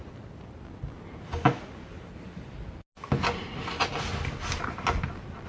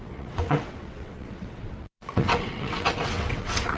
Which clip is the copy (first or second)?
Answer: second